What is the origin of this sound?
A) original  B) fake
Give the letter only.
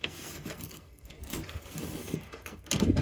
B